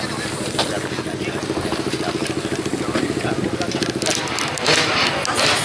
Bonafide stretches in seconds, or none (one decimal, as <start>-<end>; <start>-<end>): 0.0-5.6

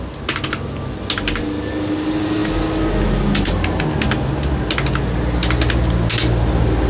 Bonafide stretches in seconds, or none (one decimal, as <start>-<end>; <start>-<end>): 0.0-6.9

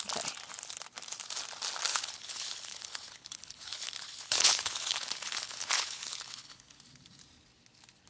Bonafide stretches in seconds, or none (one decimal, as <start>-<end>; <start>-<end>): 0.0-1.9; 6.8-8.1

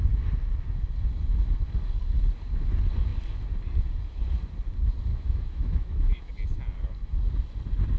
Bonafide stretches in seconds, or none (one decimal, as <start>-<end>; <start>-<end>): 0.0-5.1; 6.3-8.0

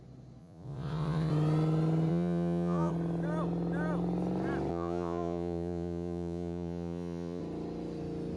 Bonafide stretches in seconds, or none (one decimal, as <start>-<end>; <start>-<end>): 0.0-0.4; 1.3-2.1; 2.9-4.7; 7.4-8.4

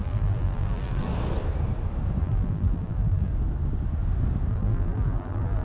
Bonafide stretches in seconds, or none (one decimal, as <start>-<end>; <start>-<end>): 1.1-2.2; 3.3-4.5

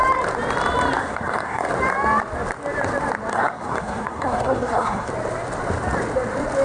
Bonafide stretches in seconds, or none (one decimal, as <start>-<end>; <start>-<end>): 0.0-1.0; 1.7-3.3; 5.1-6.6